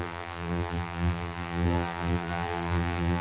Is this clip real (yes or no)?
no